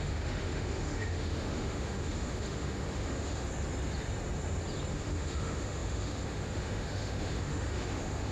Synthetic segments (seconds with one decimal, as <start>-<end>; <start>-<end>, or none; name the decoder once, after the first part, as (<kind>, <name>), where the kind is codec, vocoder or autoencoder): 0.0-3.5 (autoencoder, DAC-VAE); 4.9-8.3